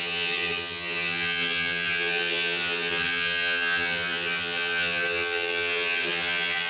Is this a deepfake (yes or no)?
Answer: yes